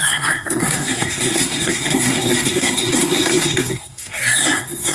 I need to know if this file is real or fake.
fake